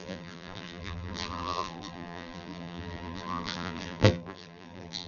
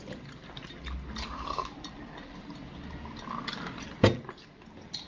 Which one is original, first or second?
second